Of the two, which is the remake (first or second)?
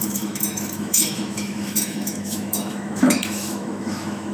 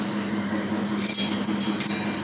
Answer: first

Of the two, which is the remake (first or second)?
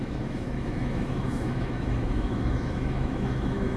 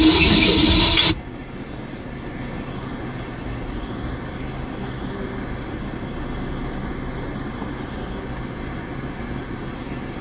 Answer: first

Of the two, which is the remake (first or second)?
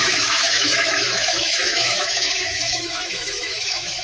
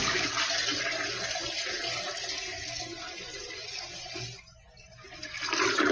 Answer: first